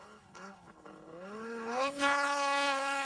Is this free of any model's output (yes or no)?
no